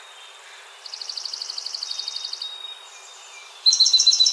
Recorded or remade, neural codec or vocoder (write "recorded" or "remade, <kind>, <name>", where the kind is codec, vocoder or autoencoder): recorded